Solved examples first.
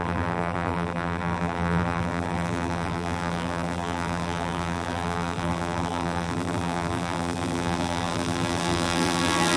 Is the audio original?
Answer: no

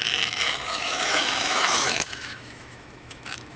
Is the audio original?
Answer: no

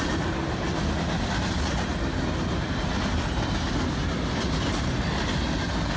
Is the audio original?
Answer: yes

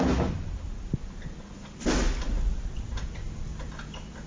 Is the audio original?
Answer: yes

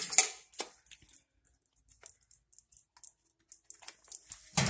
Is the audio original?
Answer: yes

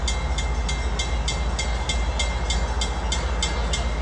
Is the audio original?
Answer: yes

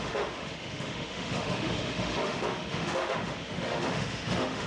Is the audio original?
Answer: no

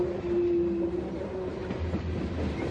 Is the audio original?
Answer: yes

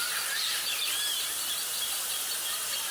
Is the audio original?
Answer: no